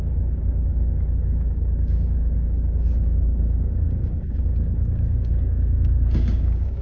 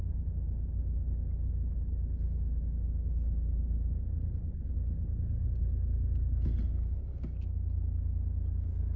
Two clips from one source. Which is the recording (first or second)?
second